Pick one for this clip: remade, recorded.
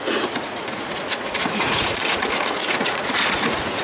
remade